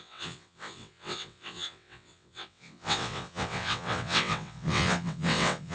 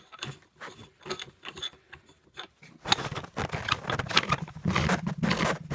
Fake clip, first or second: first